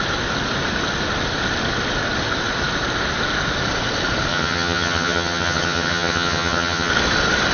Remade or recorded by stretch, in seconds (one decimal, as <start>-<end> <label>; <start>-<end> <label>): 0.0-4.3 recorded; 4.3-6.9 remade; 6.9-7.5 recorded